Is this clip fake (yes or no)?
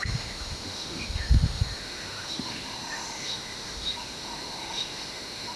yes